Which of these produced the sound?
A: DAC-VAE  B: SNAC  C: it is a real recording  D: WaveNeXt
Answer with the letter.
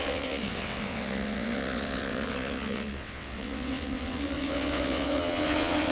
D